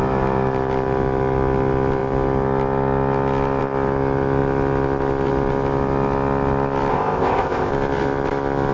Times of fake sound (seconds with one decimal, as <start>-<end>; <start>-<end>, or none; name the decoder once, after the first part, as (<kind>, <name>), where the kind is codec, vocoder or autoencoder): 6.9-7.7 (codec, ZipCodec)